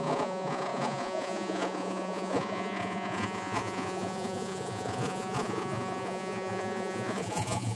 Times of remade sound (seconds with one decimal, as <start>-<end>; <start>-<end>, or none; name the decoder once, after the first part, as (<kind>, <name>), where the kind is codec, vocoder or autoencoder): 0.0-7.8 (vocoder, Vocos)